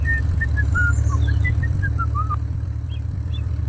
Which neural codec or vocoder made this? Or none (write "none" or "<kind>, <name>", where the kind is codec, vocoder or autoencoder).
none